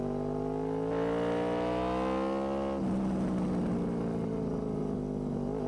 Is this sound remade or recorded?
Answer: recorded